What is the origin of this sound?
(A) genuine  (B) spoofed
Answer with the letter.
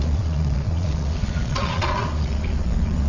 B